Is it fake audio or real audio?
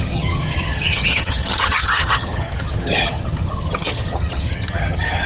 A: fake